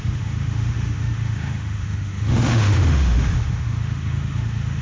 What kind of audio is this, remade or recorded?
remade